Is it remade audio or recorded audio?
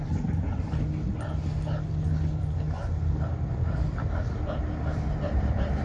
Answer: recorded